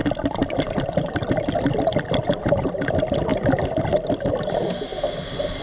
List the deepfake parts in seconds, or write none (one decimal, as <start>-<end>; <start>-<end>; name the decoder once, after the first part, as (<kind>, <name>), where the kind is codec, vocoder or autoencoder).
0.0-5.6 (vocoder, BigVGAN v2)